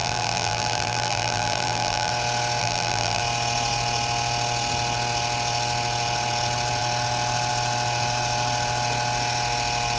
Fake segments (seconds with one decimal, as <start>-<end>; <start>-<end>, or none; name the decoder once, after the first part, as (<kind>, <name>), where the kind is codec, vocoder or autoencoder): 0.0-2.1 (vocoder, BigVGAN v2); 2.6-3.2